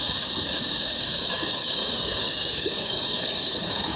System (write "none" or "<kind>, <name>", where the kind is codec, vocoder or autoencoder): codec, DAC